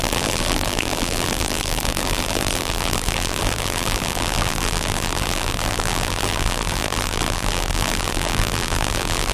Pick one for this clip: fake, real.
fake